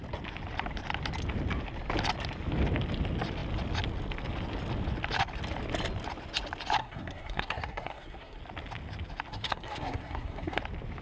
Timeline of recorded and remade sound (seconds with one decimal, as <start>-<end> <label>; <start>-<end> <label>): 0.0-6.8 recorded; 6.8-8.4 remade; 8.4-9.3 recorded; 9.3-10.6 remade; 10.6-11.0 recorded